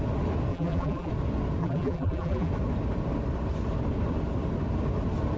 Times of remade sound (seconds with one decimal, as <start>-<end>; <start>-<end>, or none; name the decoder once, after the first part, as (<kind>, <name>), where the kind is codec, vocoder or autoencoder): 0.5-1.1 (vocoder, BigVGAN v2); 1.6-2.5